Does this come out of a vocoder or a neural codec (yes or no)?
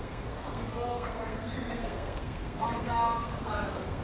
yes